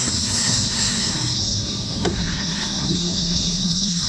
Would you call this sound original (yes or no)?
no